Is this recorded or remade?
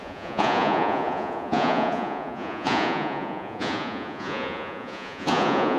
remade